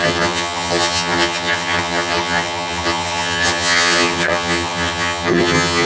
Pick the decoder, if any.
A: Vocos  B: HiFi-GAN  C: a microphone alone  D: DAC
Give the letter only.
B